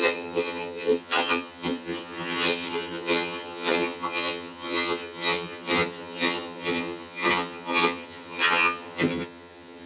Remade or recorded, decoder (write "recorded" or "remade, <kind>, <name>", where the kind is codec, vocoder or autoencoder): remade, vocoder, HiFi-GAN